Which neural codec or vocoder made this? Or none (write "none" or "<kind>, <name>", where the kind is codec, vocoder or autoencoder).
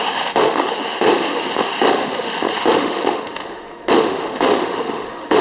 autoencoder, DAC-VAE